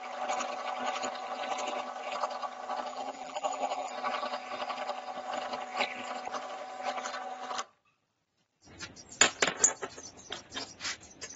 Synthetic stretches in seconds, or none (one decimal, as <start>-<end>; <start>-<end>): 2.9-3.9